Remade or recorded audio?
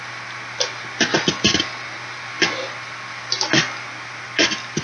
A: recorded